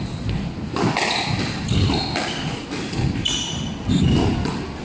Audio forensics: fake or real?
real